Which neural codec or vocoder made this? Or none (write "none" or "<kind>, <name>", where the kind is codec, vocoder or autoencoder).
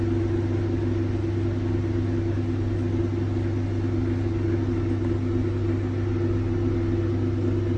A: none